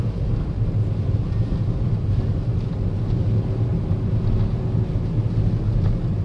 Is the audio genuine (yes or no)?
yes